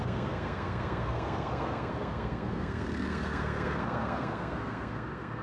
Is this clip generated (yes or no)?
yes